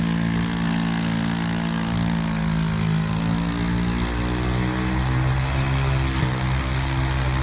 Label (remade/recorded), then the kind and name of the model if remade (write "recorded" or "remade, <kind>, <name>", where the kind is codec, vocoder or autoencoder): recorded